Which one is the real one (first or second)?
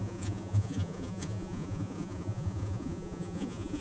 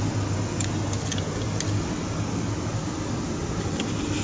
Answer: second